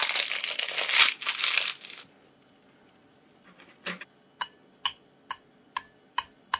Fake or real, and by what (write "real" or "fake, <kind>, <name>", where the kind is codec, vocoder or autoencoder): real